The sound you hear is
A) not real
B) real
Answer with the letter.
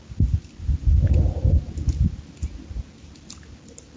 B